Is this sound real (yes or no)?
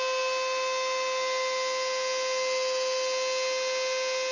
yes